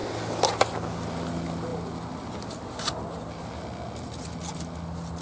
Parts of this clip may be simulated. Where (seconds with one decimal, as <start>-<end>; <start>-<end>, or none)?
none